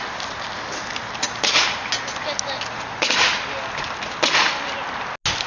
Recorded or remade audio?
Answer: recorded